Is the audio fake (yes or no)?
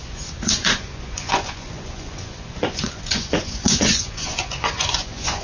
yes